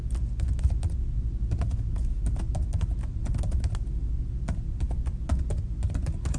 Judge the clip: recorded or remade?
recorded